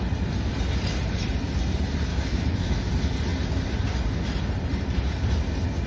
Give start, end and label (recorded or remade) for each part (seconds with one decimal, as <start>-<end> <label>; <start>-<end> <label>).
0.0-2.1 recorded; 2.1-2.9 remade; 2.9-5.9 recorded